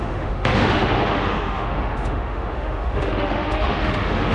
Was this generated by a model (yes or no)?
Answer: yes